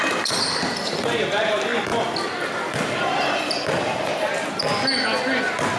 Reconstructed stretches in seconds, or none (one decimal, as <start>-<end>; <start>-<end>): 0.0-1.7; 2.2-4.7